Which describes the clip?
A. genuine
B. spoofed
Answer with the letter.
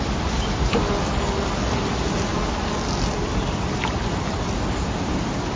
A